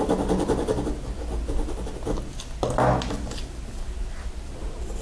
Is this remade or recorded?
recorded